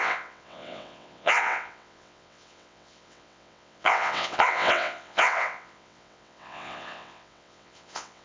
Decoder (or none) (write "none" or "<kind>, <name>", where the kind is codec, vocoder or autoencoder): vocoder, WaveNeXt